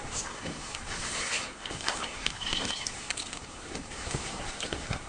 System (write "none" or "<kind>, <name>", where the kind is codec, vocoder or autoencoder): codec, SNAC